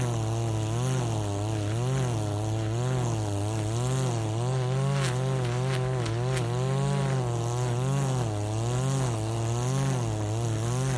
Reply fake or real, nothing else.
real